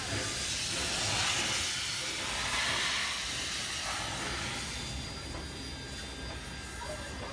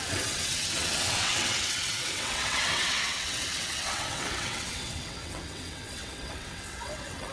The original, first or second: first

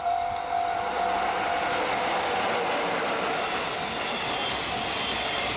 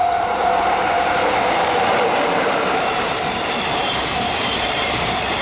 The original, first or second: first